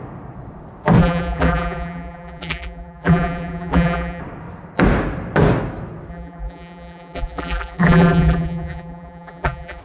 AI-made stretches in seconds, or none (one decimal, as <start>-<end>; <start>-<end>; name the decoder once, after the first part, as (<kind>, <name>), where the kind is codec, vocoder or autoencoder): 1.0-4.2 (vocoder, BigVGAN v2); 6.1-9.8